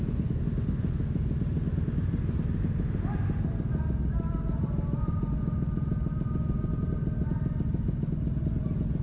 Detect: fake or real real